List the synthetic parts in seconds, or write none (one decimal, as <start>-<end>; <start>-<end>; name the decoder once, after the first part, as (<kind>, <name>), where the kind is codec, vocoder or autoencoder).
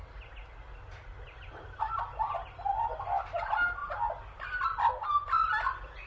none